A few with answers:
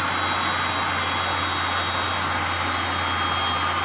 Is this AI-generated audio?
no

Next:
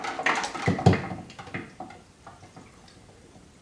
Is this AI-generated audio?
no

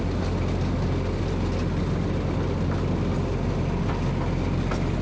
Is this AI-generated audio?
no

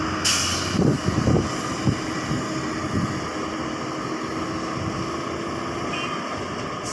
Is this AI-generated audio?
no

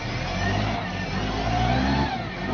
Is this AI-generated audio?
no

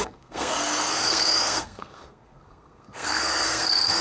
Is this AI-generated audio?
yes